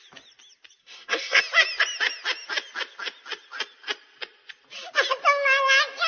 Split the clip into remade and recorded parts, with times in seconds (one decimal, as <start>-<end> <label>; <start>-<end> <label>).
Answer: 0.0-0.8 recorded; 0.8-1.4 remade; 1.4-6.1 recorded

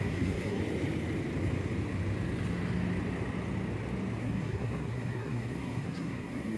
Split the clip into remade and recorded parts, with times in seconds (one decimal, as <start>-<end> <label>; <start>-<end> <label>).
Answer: 0.0-0.6 remade; 0.6-4.2 recorded; 4.2-6.6 remade

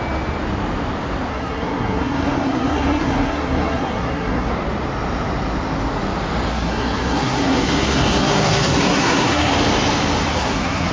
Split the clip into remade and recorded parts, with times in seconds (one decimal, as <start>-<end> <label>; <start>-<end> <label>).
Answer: 0.0-1.3 recorded; 1.3-4.5 remade; 4.5-6.5 recorded; 6.5-9.5 remade; 9.5-10.3 recorded; 10.3-10.9 remade

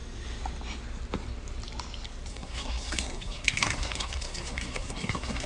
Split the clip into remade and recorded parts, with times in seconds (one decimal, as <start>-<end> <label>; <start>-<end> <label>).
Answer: 0.0-2.3 recorded; 2.3-5.5 remade

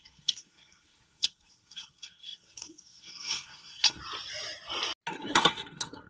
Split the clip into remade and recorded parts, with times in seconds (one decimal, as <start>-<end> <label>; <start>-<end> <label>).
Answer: 0.0-4.0 remade; 4.0-5.1 recorded; 5.1-6.1 remade

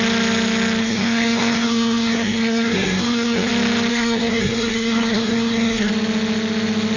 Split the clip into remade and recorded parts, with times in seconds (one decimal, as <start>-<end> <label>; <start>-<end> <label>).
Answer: 0.0-0.8 recorded; 0.8-3.5 remade; 3.5-3.9 recorded; 3.9-5.9 remade; 5.9-7.0 recorded

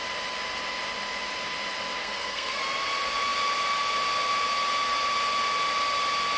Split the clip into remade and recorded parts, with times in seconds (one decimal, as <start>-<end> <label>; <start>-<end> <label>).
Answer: 0.0-2.0 recorded; 2.0-2.6 remade; 2.6-6.4 recorded

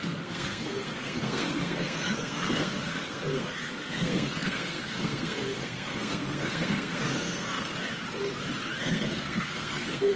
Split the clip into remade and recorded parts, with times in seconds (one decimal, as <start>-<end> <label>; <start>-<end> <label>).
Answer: 0.0-7.8 remade; 7.8-8.8 recorded; 8.8-10.2 remade